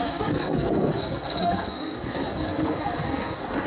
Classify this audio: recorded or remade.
remade